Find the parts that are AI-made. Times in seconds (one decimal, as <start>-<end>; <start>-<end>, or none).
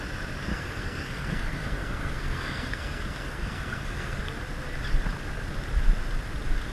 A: 0.5-4.2